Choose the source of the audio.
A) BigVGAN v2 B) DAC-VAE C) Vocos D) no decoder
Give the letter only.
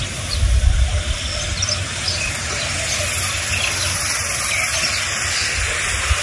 D